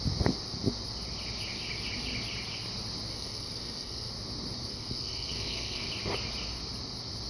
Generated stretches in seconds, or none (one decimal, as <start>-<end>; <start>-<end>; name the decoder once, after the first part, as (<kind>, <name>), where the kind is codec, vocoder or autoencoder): 3.1-4.1 (codec, SNAC); 4.7-5.9